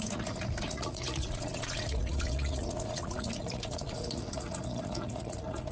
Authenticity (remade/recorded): remade